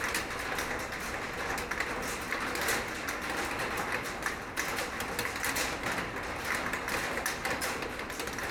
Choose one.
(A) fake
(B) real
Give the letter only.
B